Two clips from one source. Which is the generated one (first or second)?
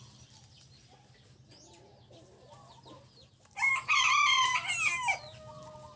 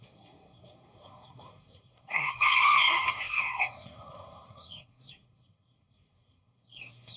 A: second